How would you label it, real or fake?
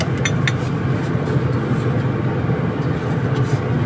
real